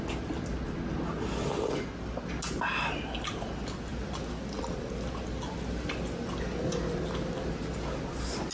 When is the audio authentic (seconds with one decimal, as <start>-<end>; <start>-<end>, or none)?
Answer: 0.0-8.5